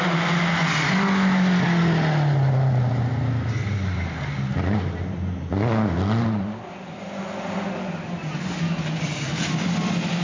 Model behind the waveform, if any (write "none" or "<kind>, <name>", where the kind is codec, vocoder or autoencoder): none